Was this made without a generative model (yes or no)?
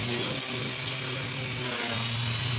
yes